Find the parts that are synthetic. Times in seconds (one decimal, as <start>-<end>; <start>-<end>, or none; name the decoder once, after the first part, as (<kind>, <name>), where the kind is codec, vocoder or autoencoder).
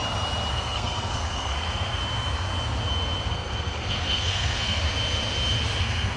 0.5-2.0 (codec, SNAC); 3.3-4.8; 5.8-6.2